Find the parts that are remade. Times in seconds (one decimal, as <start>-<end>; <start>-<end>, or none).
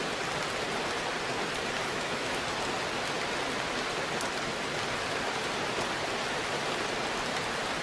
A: 1.8-2.4